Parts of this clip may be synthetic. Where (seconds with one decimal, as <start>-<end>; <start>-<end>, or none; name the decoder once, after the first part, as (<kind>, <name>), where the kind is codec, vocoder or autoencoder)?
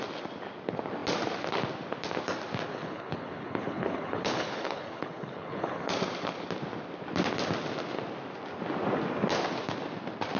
2.7-5.9 (codec, HILCodec)